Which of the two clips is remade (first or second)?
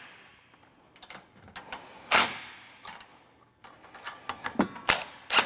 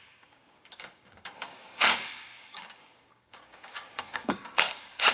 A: second